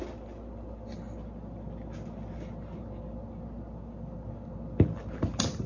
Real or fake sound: real